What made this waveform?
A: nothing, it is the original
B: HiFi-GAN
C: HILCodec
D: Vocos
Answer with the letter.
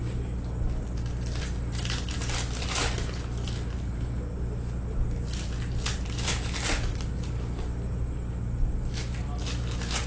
A